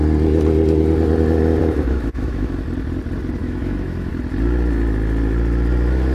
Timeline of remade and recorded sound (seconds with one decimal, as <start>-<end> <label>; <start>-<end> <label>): 0.0-1.6 recorded; 1.6-2.5 remade; 2.5-3.4 recorded; 3.4-4.1 remade; 4.1-6.1 recorded